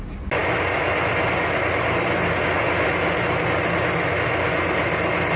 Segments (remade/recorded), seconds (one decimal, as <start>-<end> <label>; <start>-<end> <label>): 0.0-5.4 recorded